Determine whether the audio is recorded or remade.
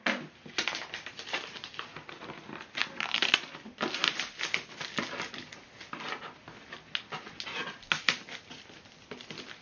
recorded